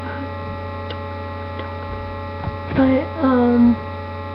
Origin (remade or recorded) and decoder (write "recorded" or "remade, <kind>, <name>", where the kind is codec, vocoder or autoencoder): recorded